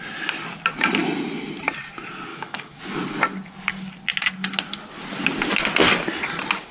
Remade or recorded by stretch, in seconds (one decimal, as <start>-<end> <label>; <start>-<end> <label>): 0.0-2.3 recorded; 2.3-2.8 remade; 2.8-6.7 recorded